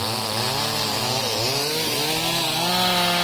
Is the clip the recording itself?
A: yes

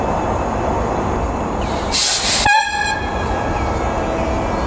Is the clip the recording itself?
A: yes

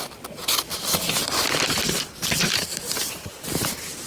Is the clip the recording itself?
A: no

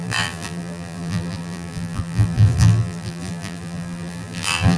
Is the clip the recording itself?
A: no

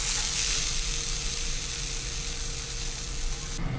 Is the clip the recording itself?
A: yes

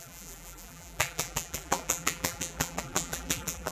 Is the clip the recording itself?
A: no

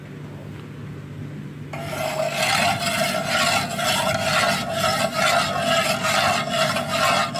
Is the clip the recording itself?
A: yes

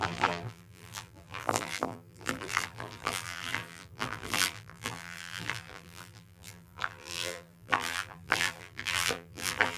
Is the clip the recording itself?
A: no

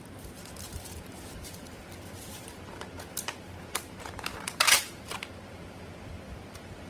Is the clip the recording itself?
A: no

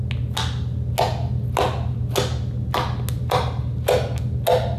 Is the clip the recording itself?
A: yes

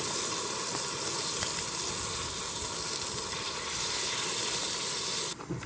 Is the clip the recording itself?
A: yes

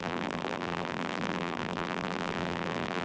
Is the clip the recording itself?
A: no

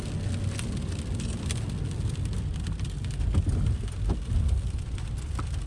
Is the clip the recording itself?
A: yes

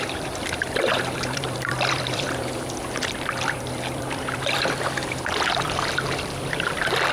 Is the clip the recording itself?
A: no